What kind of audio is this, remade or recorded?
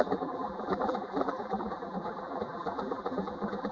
remade